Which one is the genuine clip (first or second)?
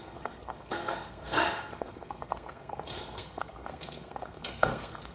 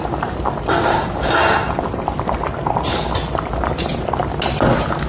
second